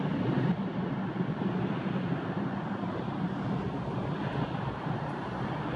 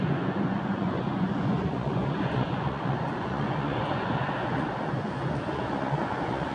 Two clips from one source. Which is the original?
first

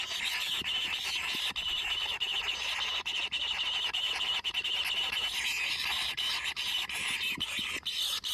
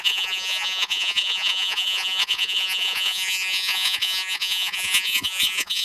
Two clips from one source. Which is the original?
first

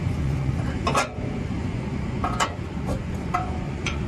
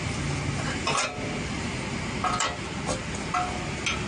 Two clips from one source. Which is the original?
second